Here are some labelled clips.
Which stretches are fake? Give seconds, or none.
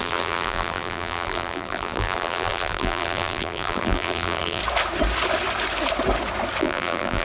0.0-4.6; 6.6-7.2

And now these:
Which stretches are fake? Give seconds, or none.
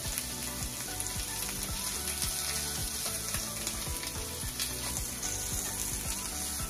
2.8-3.4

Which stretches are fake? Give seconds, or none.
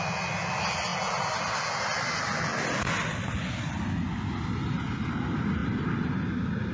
none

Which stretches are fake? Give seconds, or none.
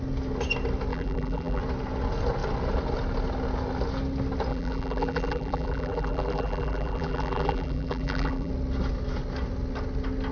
0.9-1.6; 4.5-8.5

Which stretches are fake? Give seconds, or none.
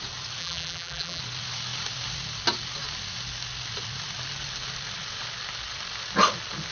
0.4-1.2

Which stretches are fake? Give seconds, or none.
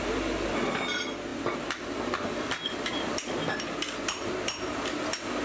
none